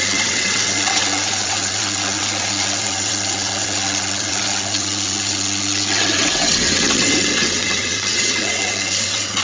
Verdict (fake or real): fake